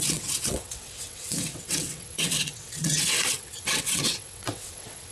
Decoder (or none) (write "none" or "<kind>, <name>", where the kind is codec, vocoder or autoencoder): vocoder, WaveNeXt